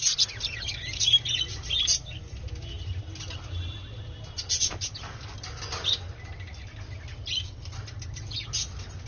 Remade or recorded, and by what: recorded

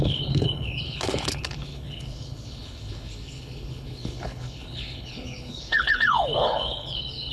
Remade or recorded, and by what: remade, codec, HILCodec